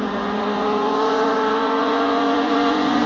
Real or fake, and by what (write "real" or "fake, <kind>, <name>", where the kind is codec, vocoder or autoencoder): fake, vocoder, Vocos